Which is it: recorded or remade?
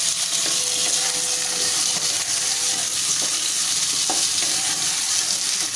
recorded